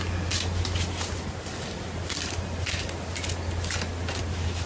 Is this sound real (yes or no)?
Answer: yes